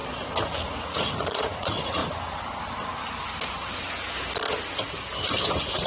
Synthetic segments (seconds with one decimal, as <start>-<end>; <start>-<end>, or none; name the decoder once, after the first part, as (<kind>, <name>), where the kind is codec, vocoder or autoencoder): 0.7-2.0 (vocoder, Vocos); 5.5-5.9